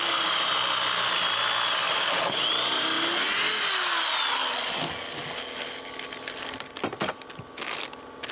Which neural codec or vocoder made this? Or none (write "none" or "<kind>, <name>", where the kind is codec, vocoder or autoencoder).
none